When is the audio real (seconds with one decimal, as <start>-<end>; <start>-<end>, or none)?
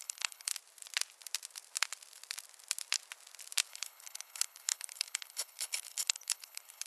0.5-3.7